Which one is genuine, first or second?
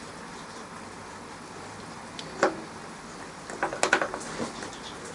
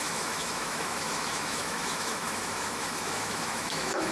first